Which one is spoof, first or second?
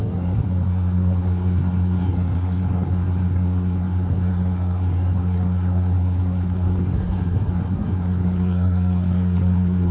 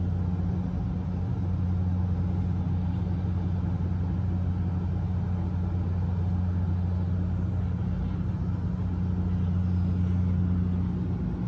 first